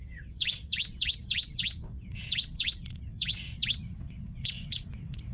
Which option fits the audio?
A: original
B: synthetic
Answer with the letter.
B